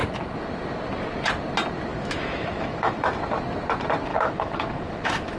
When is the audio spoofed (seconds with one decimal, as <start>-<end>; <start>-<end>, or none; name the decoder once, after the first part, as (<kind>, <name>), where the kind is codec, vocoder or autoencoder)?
1.9-3.2 (autoencoder, DAC-VAE); 4.1-5.4

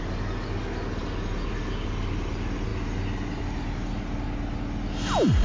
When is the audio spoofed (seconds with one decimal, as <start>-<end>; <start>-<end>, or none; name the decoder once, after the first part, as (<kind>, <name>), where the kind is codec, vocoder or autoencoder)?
none

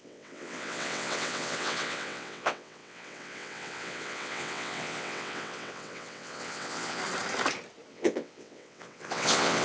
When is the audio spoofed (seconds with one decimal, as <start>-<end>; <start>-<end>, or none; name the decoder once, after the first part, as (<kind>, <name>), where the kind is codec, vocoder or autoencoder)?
0.0-7.0 (vocoder, WaveNeXt); 7.9-9.6

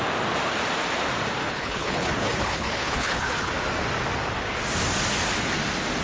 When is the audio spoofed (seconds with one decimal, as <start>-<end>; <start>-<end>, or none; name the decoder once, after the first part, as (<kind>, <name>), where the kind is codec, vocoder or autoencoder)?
1.4-3.5 (codec, HILCodec)

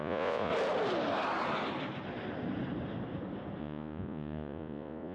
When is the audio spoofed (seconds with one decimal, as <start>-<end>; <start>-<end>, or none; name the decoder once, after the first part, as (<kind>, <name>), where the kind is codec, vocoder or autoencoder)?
0.0-0.5 (vocoder, Vocos); 3.6-5.1

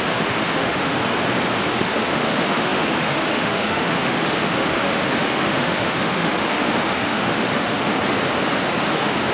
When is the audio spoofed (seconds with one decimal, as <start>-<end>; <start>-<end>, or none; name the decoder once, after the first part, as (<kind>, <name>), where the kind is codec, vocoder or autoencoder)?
0.0-1.0 (autoencoder, DAC-VAE); 1.7-7.9; 8.9-9.3

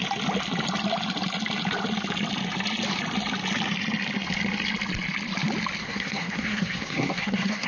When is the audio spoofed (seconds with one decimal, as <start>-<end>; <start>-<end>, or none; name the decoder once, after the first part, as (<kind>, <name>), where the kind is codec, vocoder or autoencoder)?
5.8-7.7 (codec, SNAC)

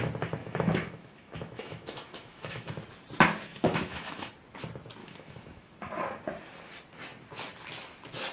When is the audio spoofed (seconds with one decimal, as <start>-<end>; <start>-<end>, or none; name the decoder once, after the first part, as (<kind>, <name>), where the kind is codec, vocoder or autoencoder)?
0.4-2.7 (autoencoder, DAC-VAE); 3.5-4.3; 5.0-5.7